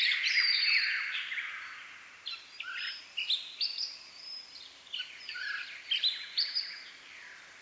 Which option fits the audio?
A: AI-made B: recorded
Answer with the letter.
A